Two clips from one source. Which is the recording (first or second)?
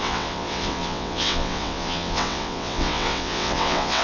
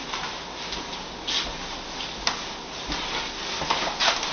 second